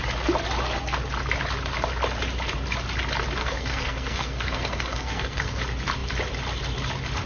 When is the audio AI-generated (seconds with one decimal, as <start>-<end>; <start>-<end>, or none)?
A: 3.4-5.6